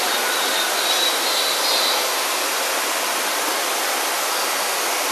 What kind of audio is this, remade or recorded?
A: recorded